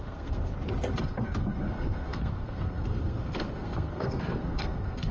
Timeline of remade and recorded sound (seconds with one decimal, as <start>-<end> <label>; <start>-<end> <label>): 0.0-0.5 remade; 0.5-1.0 recorded; 1.0-5.1 remade